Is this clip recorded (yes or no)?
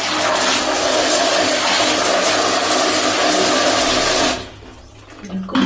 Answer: yes